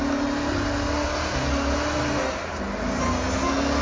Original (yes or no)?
yes